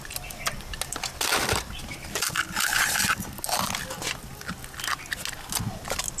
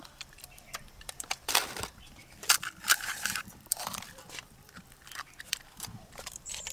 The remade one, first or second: second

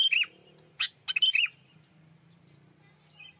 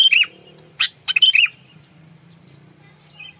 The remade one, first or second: second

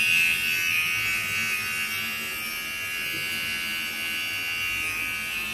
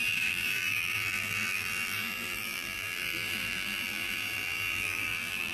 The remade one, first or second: second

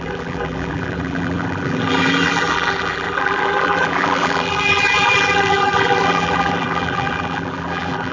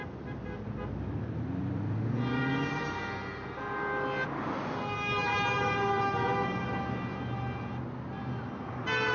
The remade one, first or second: first